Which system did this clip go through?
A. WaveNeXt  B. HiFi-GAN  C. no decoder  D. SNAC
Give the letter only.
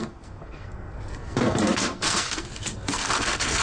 D